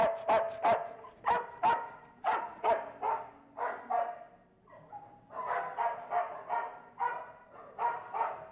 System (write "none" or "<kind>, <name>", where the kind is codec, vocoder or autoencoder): none